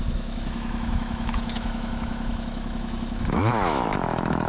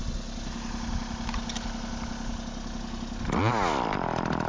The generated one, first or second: first